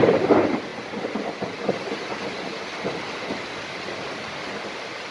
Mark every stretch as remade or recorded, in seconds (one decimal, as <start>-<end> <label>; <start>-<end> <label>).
0.0-5.1 recorded